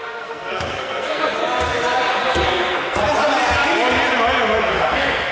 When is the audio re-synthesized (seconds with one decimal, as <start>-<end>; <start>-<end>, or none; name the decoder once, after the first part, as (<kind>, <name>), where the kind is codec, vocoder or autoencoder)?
0.0-1.4 (codec, SNAC); 2.1-3.0; 4.6-5.3